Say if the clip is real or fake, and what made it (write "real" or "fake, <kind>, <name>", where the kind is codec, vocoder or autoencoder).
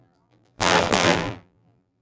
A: fake, vocoder, BigVGAN v2